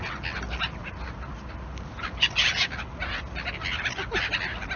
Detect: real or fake real